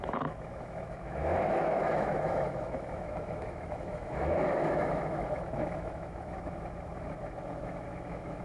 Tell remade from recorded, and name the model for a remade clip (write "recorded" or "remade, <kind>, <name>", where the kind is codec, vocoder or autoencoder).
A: remade, autoencoder, DAC-VAE